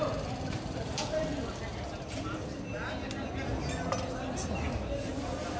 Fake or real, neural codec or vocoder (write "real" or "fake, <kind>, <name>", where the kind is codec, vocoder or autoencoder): real